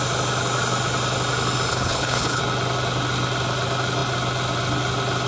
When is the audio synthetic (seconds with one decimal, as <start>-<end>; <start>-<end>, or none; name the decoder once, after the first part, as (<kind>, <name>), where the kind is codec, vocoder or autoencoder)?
1.7-2.4 (codec, HILCodec)